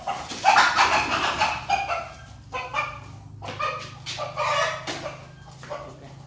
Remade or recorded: recorded